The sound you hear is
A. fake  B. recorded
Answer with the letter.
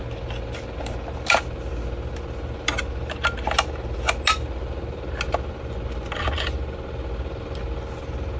B